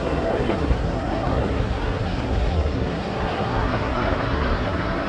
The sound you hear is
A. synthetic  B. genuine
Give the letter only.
A